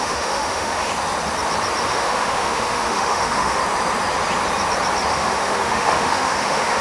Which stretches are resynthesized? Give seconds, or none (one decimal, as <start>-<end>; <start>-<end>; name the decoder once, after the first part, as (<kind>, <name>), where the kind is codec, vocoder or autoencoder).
0.0-0.9 (autoencoder, DAC-VAE); 1.8-3.6; 5.1-6.8